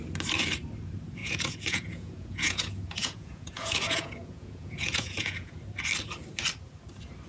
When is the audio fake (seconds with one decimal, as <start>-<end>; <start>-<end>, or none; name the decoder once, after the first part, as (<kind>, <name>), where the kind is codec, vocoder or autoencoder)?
1.2-5.6 (vocoder, Vocos)